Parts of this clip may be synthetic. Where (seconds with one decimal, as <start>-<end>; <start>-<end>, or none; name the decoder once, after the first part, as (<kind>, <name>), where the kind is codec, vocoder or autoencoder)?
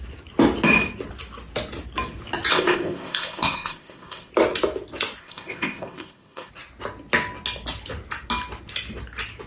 2.5-4.3 (codec, ZipCodec); 5.2-6.5